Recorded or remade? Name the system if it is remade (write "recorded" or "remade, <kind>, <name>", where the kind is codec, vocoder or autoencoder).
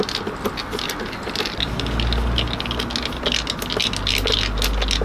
recorded